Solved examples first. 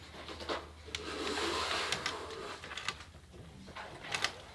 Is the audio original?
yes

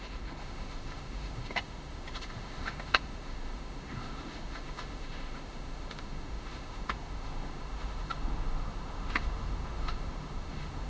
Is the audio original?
no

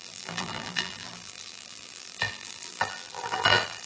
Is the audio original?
no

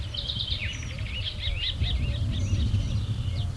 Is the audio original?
yes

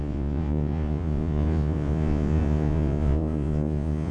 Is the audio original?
no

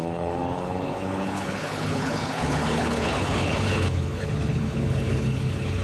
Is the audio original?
no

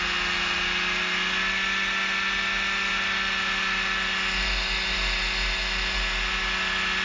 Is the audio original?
yes